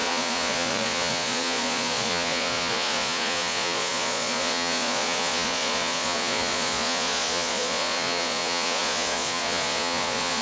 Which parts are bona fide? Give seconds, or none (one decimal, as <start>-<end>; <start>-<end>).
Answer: none

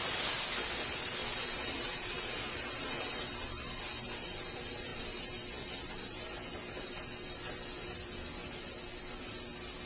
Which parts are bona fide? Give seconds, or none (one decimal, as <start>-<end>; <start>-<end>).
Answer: 0.0-9.9